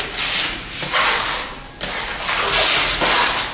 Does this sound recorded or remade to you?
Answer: recorded